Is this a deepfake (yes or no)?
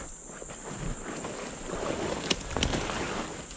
no